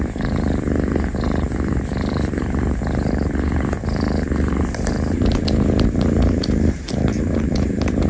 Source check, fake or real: fake